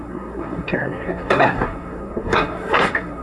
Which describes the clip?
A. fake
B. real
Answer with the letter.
A